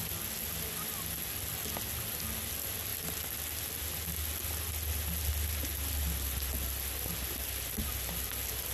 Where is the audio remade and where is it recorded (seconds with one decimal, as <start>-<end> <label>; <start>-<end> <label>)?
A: 0.0-8.7 recorded